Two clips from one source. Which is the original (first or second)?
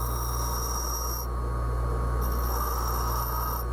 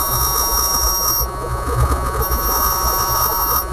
first